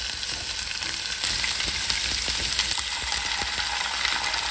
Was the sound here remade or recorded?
recorded